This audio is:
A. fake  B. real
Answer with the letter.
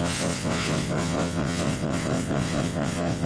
A